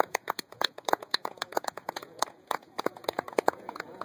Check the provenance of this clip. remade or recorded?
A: remade